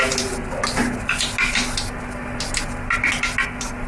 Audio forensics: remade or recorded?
recorded